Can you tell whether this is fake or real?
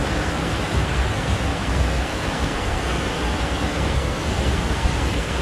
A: fake